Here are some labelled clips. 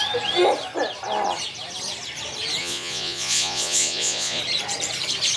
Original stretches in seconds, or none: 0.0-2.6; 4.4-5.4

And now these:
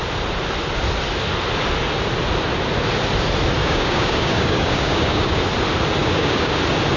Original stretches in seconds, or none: 0.0-3.6; 5.4-6.0; 6.6-7.0

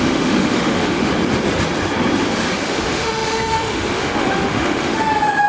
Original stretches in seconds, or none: 1.1-2.6